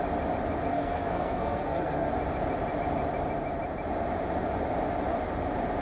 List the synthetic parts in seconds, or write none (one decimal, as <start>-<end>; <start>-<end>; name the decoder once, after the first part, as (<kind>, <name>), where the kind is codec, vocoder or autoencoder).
0.7-2.1 (codec, SNAC)